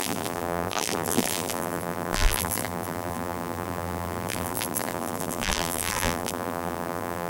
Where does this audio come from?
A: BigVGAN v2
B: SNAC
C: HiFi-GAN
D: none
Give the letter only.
A